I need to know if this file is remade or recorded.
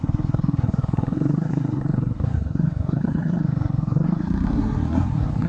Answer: remade